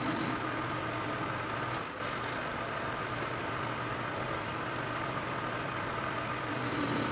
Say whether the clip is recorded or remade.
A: remade